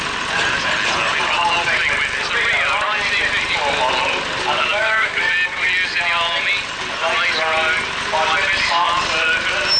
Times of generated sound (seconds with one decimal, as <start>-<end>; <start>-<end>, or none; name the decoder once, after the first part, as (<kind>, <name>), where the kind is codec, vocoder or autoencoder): 4.7-5.2 (autoencoder, DAC-VAE)